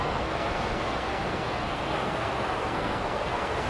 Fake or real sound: fake